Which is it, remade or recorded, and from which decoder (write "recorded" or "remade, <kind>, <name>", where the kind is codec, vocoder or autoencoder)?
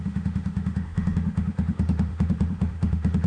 remade, autoencoder, DAC-VAE